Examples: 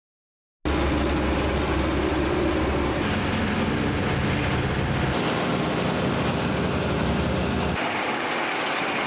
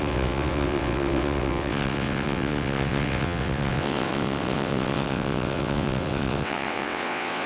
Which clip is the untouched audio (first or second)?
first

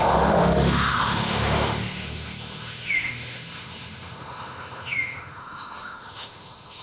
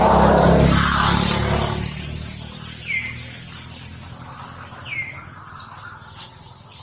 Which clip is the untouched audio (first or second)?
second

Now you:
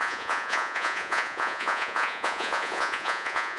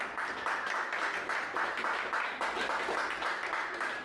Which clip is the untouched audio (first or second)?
second